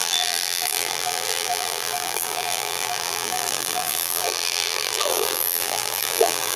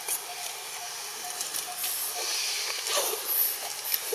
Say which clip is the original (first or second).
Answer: second